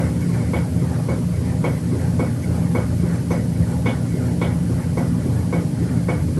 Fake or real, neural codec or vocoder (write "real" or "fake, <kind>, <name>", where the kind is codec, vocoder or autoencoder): real